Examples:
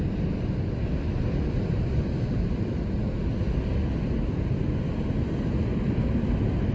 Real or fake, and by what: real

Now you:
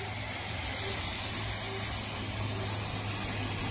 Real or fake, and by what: real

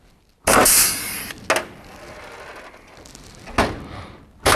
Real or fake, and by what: real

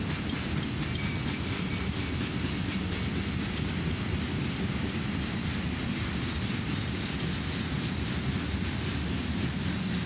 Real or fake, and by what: real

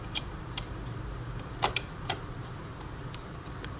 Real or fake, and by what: fake, vocoder, BigVGAN v2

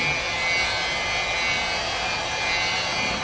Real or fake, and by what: real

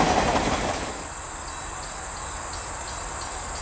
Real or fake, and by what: real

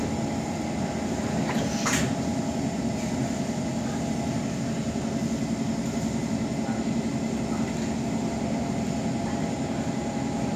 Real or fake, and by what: real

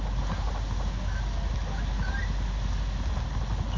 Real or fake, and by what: real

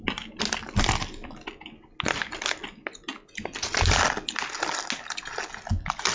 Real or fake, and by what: real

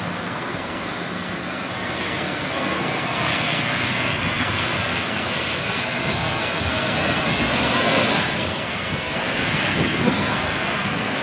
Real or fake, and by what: fake, codec, SNAC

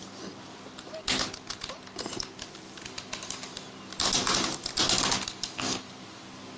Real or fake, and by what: real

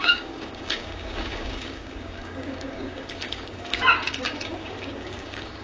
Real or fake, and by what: fake, codec, DAC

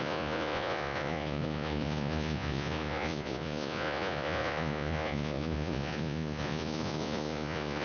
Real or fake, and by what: fake, vocoder, Vocos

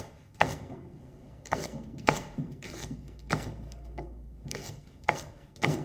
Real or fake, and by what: fake, codec, SNAC